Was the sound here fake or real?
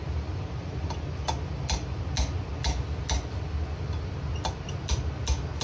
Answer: real